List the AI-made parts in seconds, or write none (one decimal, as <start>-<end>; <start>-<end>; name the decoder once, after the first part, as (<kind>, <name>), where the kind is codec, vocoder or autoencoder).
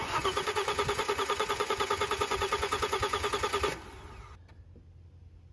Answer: 0.0-3.3 (vocoder, Vocos)